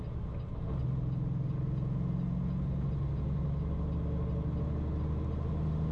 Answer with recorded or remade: recorded